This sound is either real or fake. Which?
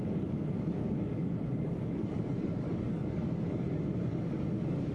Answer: fake